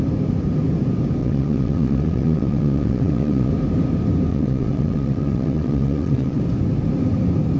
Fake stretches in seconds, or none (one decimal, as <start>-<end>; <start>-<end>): 1.2-3.5; 4.3-6.4